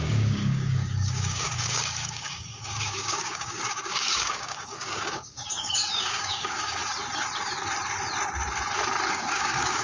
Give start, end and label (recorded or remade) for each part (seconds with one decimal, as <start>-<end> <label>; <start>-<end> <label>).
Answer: 0.0-6.8 remade; 6.8-9.1 recorded; 9.1-9.8 remade